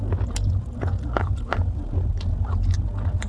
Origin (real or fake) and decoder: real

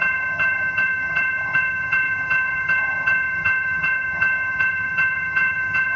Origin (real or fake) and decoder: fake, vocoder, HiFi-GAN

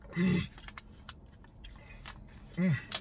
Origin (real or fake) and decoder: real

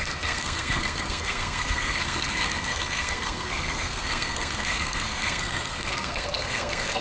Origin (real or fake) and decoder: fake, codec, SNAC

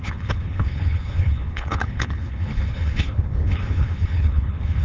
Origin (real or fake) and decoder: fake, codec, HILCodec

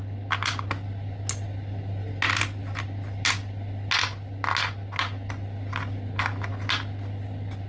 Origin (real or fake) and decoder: real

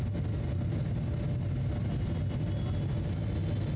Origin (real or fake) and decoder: real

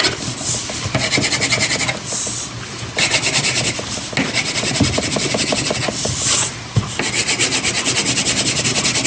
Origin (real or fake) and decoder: real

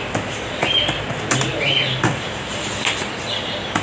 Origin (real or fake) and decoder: real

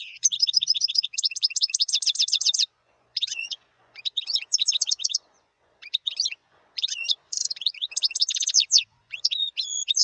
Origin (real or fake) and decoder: fake, vocoder, Vocos